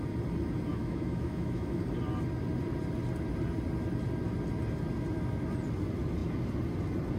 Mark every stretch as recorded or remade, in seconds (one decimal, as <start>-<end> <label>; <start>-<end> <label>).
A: 0.0-0.7 recorded; 0.7-1.8 remade; 1.8-7.2 recorded